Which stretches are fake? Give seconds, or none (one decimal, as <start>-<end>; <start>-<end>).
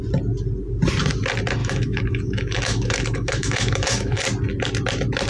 1.6-4.2